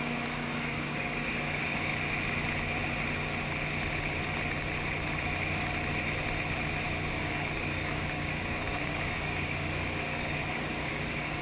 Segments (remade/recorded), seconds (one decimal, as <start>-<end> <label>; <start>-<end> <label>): 0.0-1.9 remade; 1.9-7.1 recorded; 7.1-11.4 remade